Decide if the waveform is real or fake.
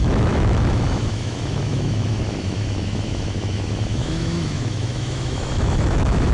fake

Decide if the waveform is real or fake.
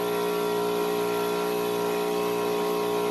real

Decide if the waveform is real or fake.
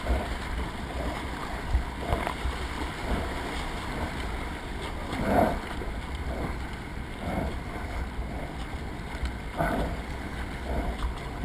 real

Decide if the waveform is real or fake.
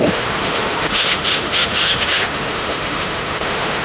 fake